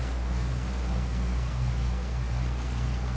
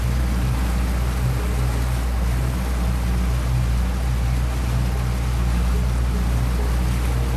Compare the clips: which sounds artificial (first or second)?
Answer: first